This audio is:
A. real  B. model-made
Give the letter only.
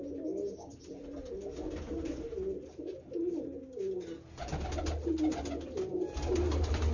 A